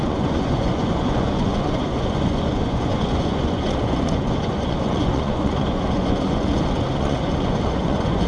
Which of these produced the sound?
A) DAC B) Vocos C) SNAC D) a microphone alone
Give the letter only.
B